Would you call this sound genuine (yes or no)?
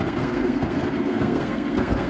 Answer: no